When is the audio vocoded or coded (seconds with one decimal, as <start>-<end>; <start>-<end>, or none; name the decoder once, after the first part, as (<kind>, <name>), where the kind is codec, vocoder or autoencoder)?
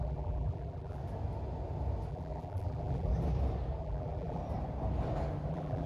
0.0-1.0 (vocoder, BigVGAN v2); 2.1-3.1; 3.8-4.4; 5.5-5.9